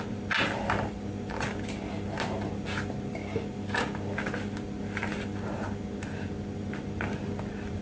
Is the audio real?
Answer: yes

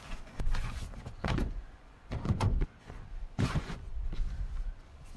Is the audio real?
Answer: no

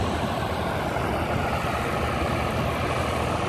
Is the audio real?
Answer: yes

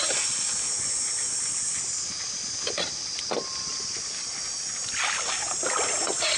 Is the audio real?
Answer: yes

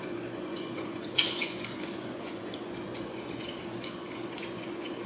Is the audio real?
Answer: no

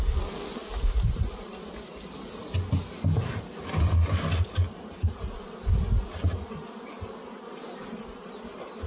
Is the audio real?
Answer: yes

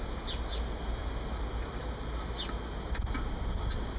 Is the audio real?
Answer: yes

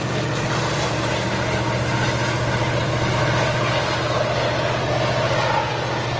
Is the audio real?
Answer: yes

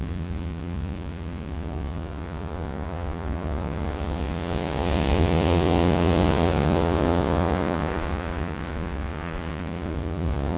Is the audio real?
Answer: no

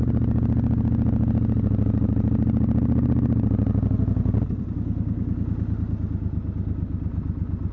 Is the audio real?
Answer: yes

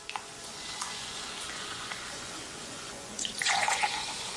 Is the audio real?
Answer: no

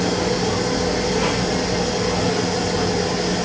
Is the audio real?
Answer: yes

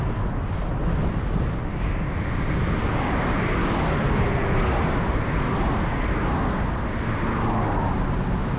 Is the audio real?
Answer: yes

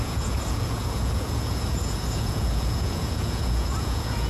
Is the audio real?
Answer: no